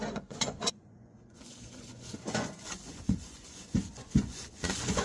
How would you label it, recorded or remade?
remade